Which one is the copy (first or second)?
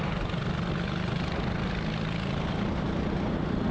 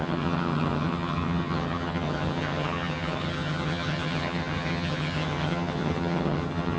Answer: second